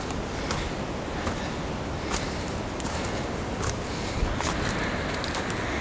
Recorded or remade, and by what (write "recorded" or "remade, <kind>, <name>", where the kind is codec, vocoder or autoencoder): recorded